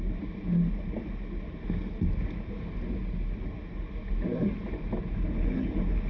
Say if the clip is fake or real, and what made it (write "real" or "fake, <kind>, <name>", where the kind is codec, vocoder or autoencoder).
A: real